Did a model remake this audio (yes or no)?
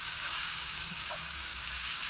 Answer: yes